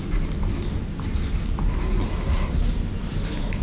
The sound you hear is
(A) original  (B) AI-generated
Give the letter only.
A